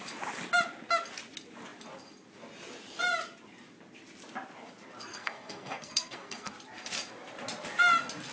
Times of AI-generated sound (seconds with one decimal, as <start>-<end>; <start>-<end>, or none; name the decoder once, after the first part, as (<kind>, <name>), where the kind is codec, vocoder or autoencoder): 5.1-6.5 (codec, SNAC)